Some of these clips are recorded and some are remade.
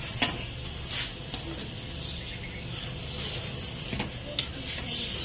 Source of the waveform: recorded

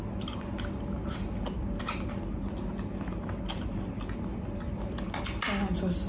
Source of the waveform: recorded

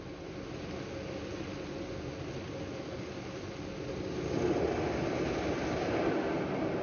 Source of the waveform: recorded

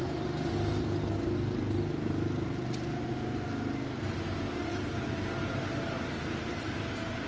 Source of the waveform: recorded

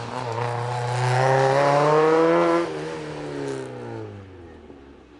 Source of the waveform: recorded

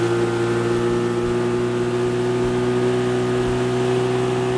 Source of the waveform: recorded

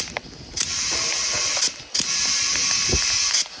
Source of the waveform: recorded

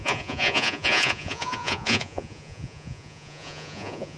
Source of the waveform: remade